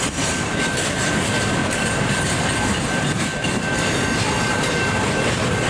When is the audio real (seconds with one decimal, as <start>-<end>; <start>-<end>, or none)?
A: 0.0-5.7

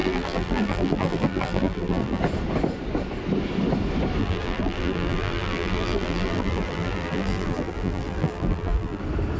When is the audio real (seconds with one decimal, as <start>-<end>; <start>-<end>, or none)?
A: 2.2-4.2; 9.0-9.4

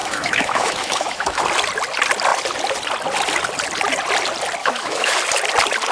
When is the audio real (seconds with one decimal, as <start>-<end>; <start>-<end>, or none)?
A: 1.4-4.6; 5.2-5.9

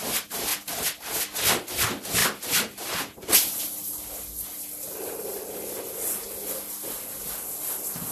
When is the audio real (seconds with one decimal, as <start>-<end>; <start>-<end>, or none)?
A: 0.0-2.2; 3.8-4.5; 5.5-8.1

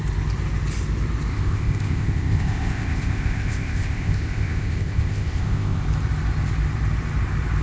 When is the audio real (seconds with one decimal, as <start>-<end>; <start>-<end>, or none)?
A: 0.0-1.3; 5.8-7.6